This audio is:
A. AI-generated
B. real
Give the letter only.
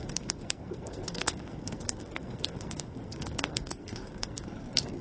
A